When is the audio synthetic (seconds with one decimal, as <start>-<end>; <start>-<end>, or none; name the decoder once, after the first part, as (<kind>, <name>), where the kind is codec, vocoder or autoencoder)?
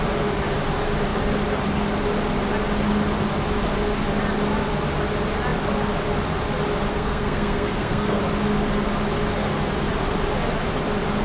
6.9-8.2 (codec, SNAC)